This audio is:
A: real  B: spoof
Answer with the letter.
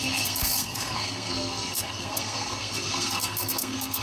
B